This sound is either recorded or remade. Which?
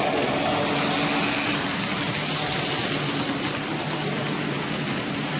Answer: recorded